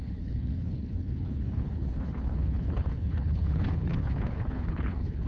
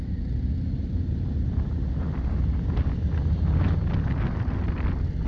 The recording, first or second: second